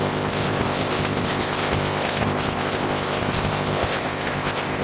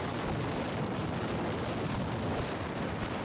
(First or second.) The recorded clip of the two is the second